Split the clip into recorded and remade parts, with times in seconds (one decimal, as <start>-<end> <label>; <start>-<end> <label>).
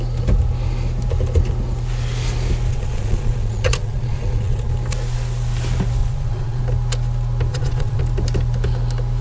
0.0-2.7 recorded; 2.7-4.7 remade; 4.7-6.0 recorded; 6.0-6.6 remade; 6.6-7.5 recorded; 7.5-8.0 remade; 8.0-9.2 recorded